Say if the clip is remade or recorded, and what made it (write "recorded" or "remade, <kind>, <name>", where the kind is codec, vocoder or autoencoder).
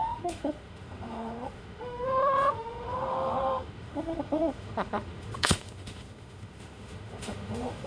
remade, autoencoder, DAC-VAE